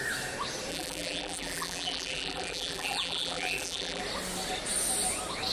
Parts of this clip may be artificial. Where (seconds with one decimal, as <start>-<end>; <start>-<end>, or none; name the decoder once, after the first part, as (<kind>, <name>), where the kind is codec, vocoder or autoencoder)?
0.7-4.0 (vocoder, BigVGAN v2)